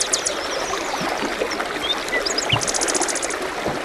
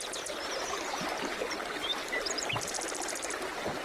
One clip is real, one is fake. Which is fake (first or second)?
second